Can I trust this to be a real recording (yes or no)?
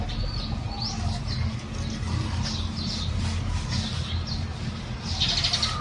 yes